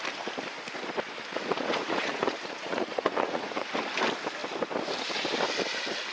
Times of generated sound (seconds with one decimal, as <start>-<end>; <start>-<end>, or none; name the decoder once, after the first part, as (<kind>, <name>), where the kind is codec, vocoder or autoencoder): 1.3-3.7 (vocoder, Vocos)